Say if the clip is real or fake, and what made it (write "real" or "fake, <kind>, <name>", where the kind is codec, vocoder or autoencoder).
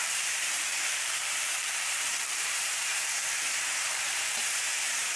fake, vocoder, BigVGAN v2